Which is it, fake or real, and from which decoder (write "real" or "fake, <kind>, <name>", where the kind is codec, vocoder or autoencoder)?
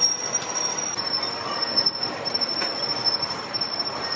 real